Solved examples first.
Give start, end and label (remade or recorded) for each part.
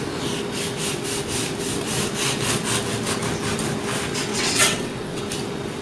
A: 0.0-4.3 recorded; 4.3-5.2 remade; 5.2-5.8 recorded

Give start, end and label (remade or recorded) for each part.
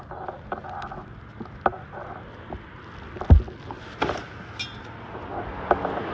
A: 0.0-6.1 recorded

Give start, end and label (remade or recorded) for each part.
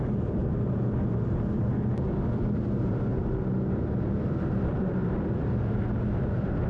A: 0.0-0.4 remade; 0.4-2.1 recorded; 2.1-6.7 remade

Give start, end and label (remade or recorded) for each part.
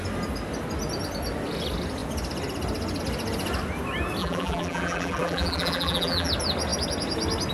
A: 0.0-4.2 recorded; 4.2-6.3 remade; 6.3-7.5 recorded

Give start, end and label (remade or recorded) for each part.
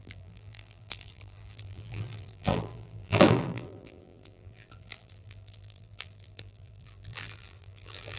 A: 0.0-8.2 remade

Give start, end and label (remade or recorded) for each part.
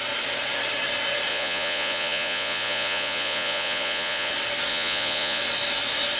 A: 0.0-1.3 recorded; 1.3-4.3 remade; 4.3-4.7 recorded; 4.7-5.4 remade; 5.4-6.2 recorded